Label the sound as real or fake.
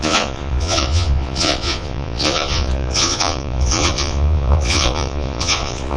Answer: fake